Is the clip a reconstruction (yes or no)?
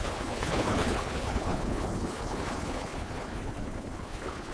yes